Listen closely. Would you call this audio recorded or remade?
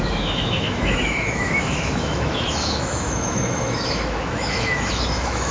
remade